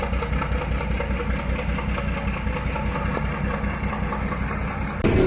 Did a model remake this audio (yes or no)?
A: no